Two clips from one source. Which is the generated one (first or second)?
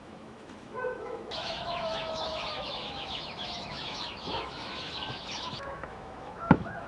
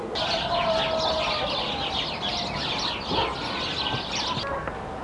first